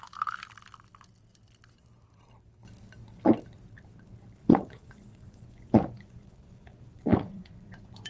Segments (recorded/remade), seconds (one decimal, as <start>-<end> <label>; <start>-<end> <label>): 0.0-4.4 recorded; 4.4-8.1 remade